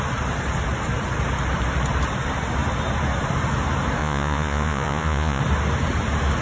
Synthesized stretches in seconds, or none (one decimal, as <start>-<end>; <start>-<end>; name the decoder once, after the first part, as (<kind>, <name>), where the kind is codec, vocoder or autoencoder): 4.0-5.4 (vocoder, Vocos)